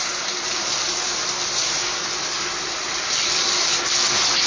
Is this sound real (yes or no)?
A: yes